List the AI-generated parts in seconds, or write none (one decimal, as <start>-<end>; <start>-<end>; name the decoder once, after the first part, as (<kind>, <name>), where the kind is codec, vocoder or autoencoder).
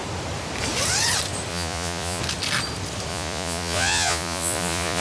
1.5-2.2 (vocoder, Vocos); 3.1-5.0